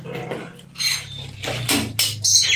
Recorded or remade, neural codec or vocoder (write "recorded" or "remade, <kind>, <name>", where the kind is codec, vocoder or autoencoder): recorded